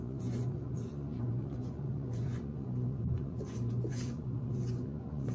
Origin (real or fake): fake